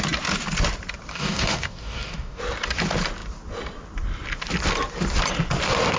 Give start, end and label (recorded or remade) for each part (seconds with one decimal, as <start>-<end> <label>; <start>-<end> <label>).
0.0-1.1 recorded; 1.1-2.4 remade; 2.4-6.0 recorded